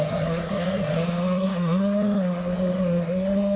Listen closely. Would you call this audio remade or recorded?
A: remade